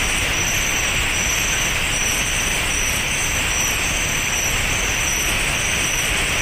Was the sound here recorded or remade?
recorded